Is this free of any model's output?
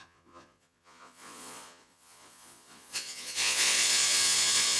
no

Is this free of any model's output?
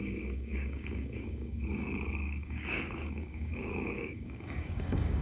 no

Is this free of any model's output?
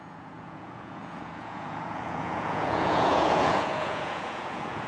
no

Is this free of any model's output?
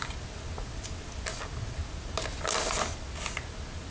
yes